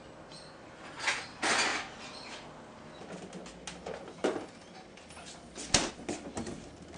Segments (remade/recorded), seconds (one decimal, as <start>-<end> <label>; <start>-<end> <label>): 0.0-7.0 recorded